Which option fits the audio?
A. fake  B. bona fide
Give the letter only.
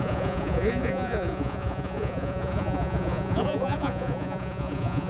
A